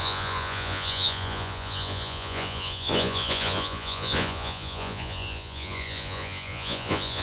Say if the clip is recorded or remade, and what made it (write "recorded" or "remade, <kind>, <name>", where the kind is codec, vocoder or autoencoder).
remade, vocoder, Vocos